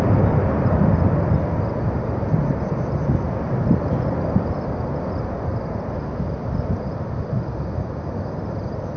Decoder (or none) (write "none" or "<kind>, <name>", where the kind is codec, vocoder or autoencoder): none